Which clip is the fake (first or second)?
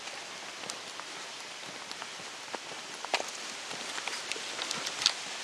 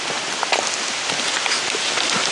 first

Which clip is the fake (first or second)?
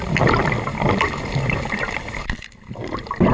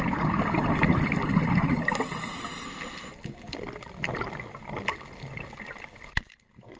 first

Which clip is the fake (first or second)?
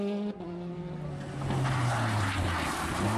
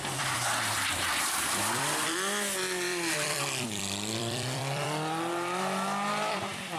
second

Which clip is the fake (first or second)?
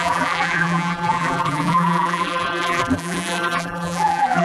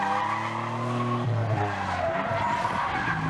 first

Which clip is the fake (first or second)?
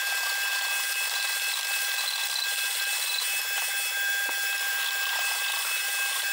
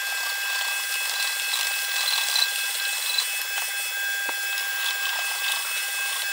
first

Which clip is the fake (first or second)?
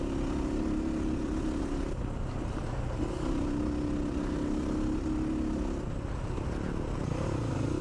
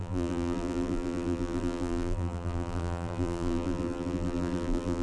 second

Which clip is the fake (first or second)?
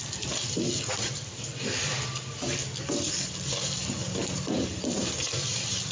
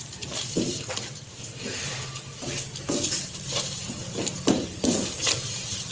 second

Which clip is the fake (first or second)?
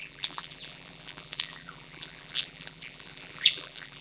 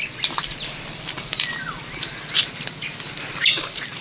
first